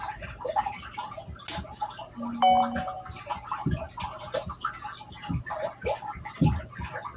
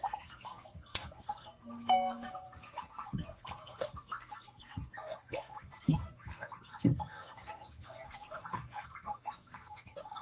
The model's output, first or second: second